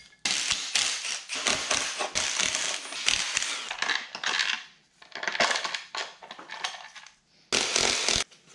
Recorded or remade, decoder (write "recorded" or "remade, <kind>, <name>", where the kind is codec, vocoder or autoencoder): recorded